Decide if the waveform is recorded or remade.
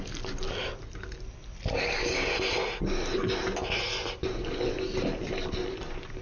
recorded